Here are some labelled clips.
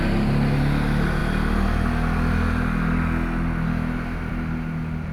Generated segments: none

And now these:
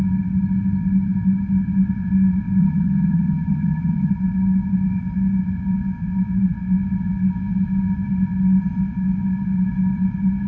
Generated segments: 2.6-4.1 (vocoder, HiFi-GAN)

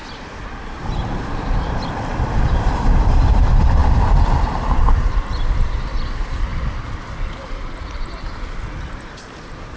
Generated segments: 1.2-6.5 (vocoder, BigVGAN v2); 7.5-9.8

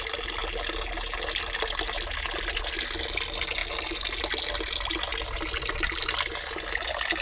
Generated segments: none